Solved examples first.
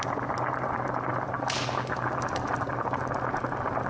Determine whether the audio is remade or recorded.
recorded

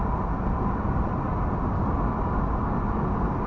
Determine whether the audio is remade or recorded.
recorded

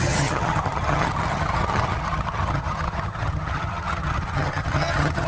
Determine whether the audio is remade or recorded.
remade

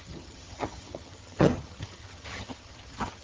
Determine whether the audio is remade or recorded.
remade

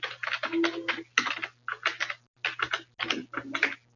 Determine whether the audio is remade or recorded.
recorded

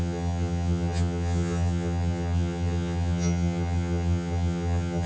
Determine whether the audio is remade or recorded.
remade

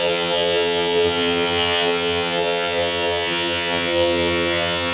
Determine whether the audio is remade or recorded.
remade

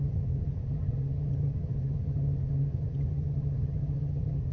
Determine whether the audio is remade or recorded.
remade